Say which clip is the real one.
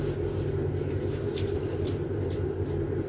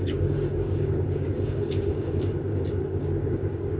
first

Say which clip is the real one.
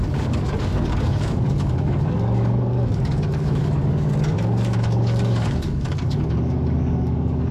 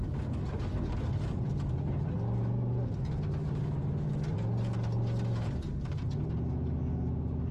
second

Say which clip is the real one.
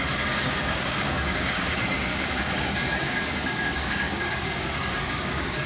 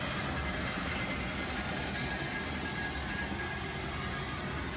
second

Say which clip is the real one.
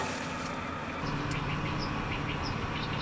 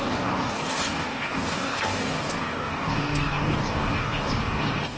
first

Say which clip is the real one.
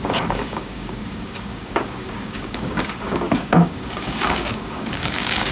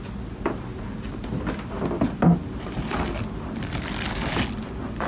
second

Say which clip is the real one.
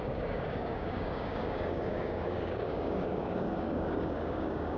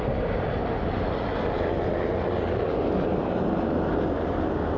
second